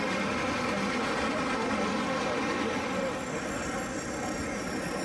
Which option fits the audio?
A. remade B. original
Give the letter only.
B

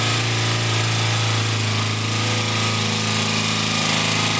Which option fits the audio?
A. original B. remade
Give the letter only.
A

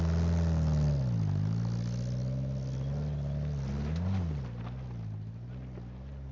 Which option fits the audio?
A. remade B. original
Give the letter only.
B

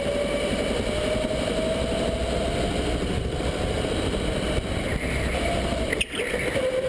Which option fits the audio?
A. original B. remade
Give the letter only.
A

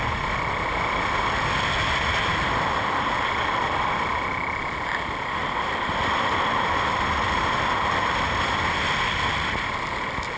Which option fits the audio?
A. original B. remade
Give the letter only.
A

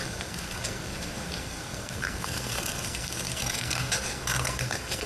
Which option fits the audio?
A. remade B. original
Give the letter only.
A